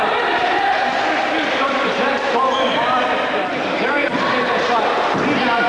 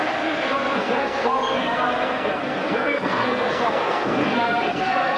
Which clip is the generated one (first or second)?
second